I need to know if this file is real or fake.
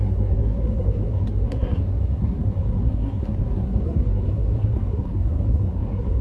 fake